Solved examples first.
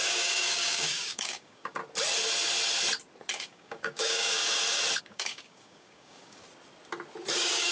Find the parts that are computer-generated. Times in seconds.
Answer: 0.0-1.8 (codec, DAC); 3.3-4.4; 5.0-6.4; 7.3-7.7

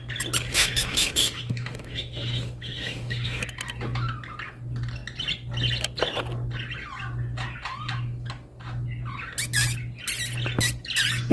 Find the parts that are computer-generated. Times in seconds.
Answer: 0.5-3.4 (autoencoder, DAC-VAE)